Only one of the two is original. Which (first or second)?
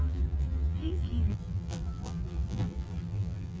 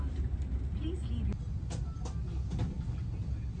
second